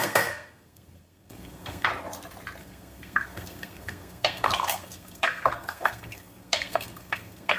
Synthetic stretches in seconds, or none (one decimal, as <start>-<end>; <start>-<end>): 0.0-1.9; 2.6-7.6